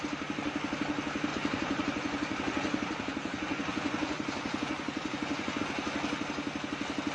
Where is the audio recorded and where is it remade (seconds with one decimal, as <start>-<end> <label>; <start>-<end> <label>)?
0.0-1.3 recorded; 1.3-5.6 remade; 5.6-7.1 recorded